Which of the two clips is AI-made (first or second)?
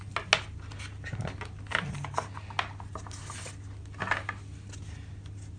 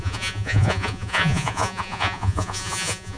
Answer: second